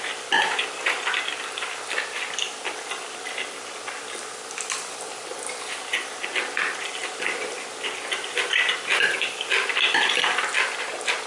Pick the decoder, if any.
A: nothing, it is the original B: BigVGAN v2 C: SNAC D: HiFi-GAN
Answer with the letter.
A